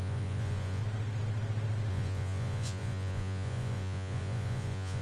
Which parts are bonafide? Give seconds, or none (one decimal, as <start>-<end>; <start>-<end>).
0.8-1.9